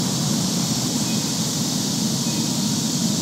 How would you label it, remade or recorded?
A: recorded